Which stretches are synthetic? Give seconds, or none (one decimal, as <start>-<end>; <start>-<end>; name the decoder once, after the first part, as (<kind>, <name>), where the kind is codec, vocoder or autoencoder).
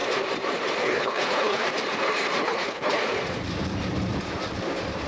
0.8-1.6 (codec, HILCodec); 2.4-3.0